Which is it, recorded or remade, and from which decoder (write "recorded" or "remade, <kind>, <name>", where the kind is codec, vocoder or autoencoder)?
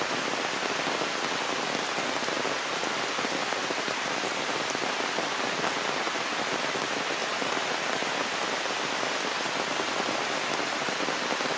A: recorded